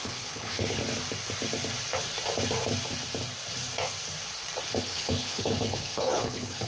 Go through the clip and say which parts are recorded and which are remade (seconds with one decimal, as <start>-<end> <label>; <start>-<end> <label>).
0.0-0.8 remade; 0.8-4.8 recorded; 4.8-6.7 remade